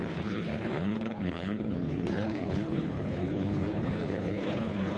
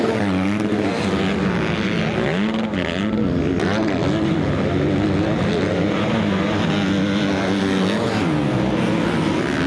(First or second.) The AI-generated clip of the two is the first